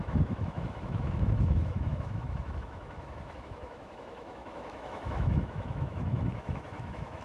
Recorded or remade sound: remade